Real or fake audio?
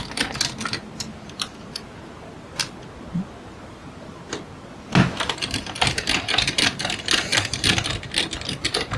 real